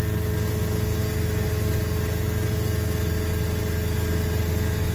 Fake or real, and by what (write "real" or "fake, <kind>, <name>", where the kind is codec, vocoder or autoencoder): real